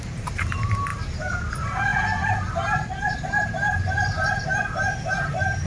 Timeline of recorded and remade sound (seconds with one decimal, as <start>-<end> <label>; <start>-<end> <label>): 0.0-5.7 remade